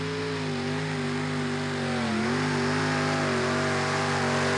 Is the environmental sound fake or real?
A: real